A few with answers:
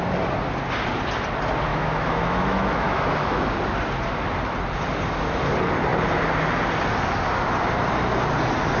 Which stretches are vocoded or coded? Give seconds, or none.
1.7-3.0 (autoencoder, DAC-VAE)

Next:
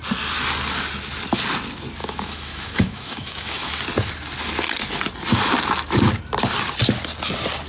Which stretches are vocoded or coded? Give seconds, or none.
2.0-3.7 (autoencoder, DAC-VAE)

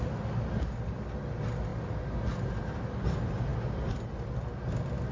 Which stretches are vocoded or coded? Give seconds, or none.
none